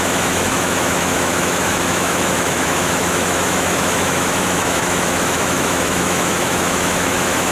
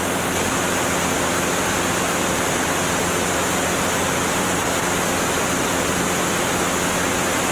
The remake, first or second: first